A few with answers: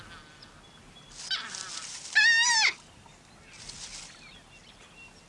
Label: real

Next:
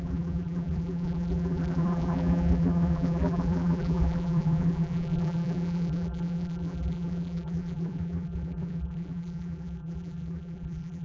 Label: fake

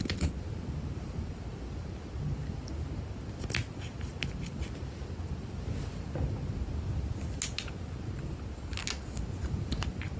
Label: real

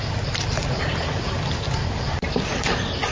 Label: real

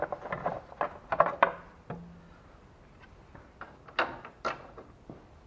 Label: real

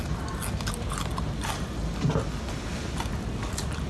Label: real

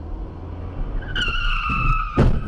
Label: real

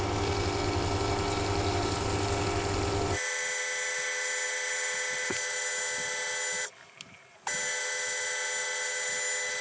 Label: real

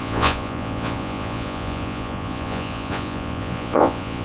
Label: fake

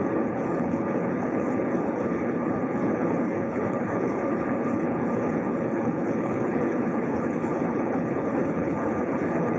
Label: fake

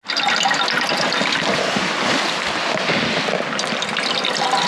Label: real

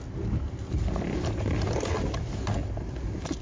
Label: real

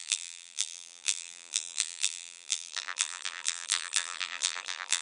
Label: fake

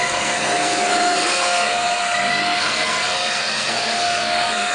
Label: fake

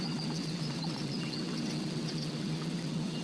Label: fake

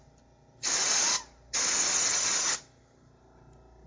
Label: real